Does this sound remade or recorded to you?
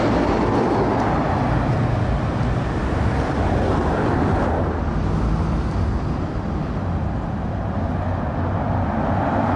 recorded